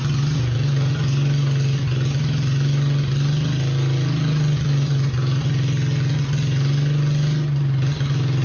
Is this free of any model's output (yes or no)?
yes